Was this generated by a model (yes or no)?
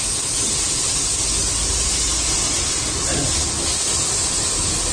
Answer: no